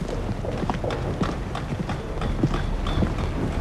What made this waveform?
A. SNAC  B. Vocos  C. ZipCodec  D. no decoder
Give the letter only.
D